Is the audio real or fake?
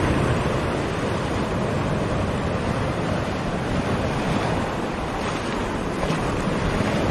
real